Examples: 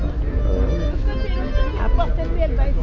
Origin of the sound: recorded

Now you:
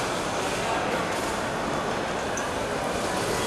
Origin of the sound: recorded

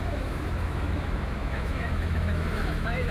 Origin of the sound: remade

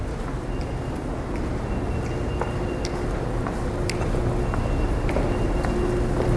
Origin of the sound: recorded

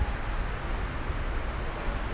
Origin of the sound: recorded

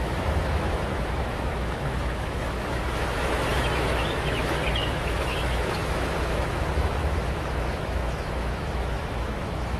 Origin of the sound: remade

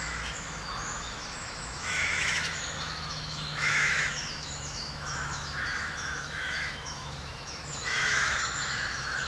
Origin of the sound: remade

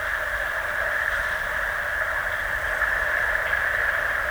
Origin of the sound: recorded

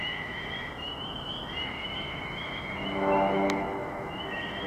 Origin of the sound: remade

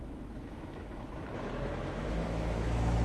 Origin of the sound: remade